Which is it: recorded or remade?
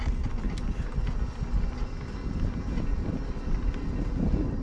recorded